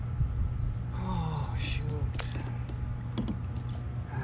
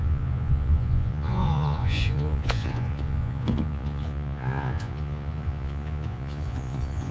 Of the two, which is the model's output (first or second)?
second